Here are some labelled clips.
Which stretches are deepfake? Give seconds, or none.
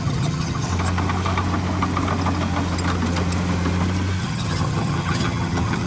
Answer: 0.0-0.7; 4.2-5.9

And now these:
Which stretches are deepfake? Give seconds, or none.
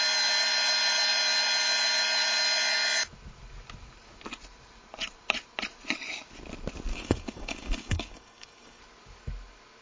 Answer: 6.9-8.8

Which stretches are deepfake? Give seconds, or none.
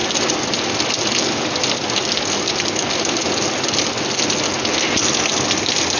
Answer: none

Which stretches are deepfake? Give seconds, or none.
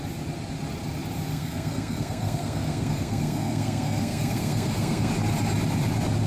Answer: 1.3-5.1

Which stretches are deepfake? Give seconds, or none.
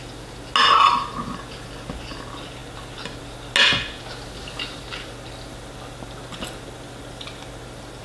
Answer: none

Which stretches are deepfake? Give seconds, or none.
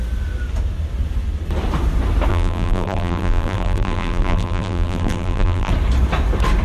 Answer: 2.3-5.7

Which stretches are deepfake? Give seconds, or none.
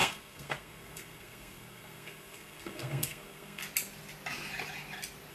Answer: 0.0-3.6